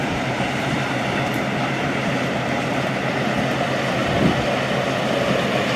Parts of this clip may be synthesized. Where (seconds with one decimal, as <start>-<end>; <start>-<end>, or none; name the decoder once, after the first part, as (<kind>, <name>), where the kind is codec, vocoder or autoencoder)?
0.0-3.5 (vocoder, BigVGAN v2)